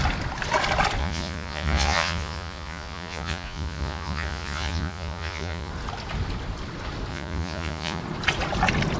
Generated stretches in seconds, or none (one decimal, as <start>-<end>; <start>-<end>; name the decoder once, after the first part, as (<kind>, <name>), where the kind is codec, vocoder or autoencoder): 1.0-5.7 (vocoder, Vocos); 7.1-8.0

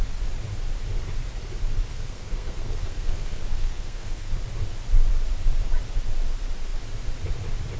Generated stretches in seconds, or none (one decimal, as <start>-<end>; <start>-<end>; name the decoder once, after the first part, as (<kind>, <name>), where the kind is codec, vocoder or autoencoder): 1.9-4.3 (codec, SNAC)